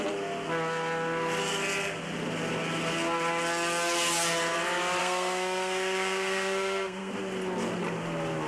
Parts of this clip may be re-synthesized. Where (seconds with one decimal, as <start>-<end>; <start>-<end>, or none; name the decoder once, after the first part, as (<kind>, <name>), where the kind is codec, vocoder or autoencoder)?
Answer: 5.0-7.1 (codec, SNAC)